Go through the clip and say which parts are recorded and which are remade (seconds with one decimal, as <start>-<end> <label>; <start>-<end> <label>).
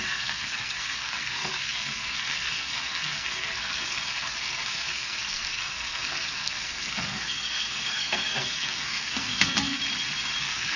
0.0-9.8 remade; 9.8-10.4 recorded; 10.4-10.8 remade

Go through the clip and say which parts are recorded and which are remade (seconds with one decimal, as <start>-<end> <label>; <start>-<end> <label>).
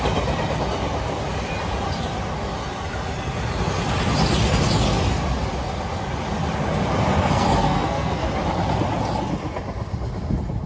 0.0-7.2 recorded; 7.2-8.3 remade; 8.3-10.7 recorded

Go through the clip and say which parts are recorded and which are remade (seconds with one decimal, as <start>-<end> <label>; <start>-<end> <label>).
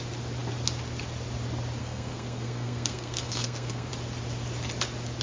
0.0-1.8 recorded; 1.8-3.9 remade; 3.9-5.2 recorded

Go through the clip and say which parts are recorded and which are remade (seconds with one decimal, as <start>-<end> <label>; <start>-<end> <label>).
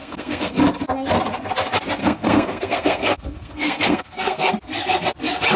0.0-0.5 remade; 0.5-2.0 recorded; 2.0-4.5 remade; 4.5-5.6 recorded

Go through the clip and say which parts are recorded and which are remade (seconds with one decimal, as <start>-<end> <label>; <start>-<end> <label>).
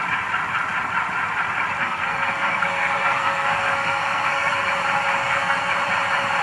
0.0-1.8 recorded; 1.8-4.7 remade; 4.7-5.2 recorded; 5.2-5.7 remade; 5.7-6.4 recorded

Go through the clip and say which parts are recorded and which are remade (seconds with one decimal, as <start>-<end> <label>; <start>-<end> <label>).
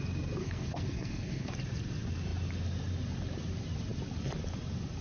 0.0-0.4 recorded; 0.4-1.5 remade; 1.5-5.0 recorded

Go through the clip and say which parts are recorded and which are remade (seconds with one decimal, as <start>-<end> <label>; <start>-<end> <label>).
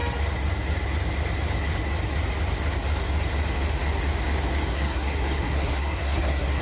0.0-4.7 recorded; 4.7-6.6 remade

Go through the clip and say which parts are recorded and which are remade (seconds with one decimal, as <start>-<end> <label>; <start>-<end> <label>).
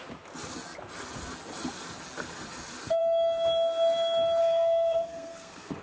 0.0-4.4 recorded; 4.4-5.8 remade